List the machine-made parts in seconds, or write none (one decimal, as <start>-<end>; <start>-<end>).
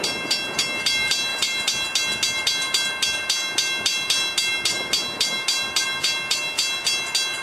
none